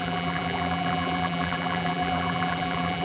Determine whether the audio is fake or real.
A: fake